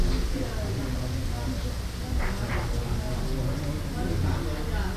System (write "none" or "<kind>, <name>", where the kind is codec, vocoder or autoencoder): none